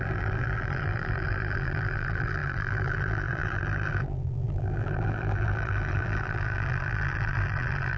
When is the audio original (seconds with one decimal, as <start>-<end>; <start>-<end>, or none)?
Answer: none